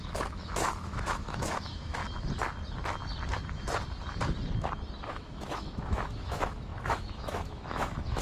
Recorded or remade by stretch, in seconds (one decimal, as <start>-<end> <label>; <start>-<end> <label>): 0.0-2.0 remade; 2.0-5.1 recorded; 5.1-8.2 remade